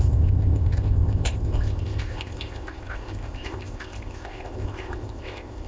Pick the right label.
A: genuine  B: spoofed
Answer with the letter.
B